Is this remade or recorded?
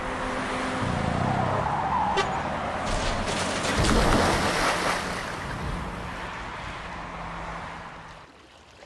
recorded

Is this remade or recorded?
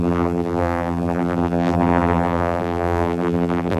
remade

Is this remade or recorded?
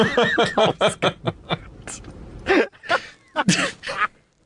recorded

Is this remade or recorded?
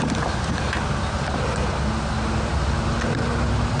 recorded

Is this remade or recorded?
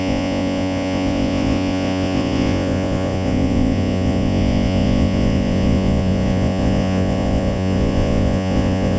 remade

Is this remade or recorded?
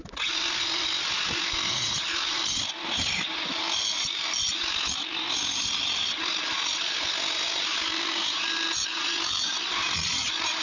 recorded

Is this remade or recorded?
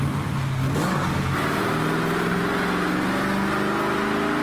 recorded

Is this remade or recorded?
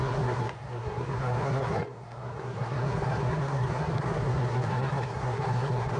remade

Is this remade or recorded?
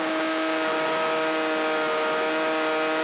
recorded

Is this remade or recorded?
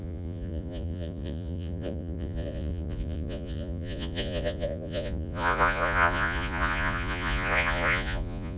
remade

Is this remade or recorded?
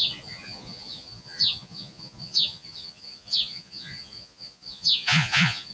remade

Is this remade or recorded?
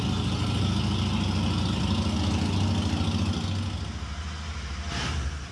recorded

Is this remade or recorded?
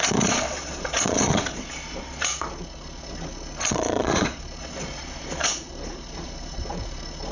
remade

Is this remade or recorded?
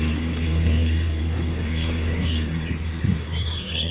remade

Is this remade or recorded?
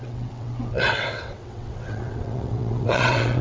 remade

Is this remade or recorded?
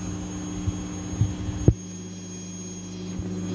recorded